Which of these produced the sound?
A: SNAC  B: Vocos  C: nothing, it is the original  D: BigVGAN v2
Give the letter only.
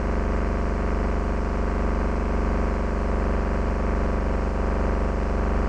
C